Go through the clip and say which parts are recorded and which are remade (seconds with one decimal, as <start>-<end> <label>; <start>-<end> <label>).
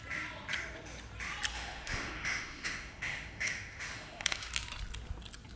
0.0-1.5 recorded; 1.5-4.5 remade; 4.5-5.6 recorded